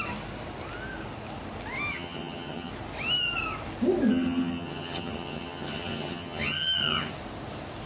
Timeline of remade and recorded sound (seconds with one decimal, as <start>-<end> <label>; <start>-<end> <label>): 0.0-1.9 recorded; 1.9-2.7 remade; 2.7-4.1 recorded; 4.1-7.1 remade; 7.1-7.9 recorded